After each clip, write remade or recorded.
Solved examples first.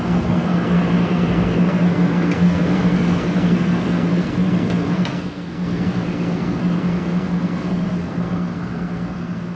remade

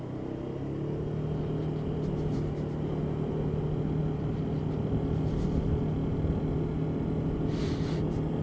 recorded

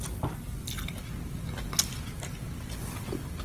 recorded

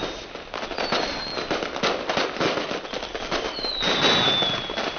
recorded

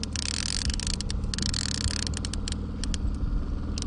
recorded